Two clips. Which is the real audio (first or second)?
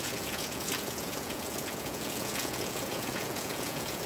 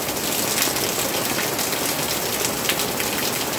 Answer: second